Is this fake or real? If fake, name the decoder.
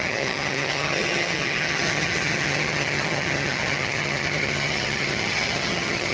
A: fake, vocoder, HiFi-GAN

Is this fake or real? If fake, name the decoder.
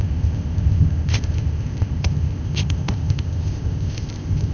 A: fake, codec, ZipCodec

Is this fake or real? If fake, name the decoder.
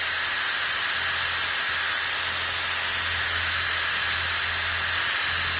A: real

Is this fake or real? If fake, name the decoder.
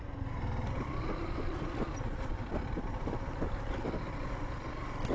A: real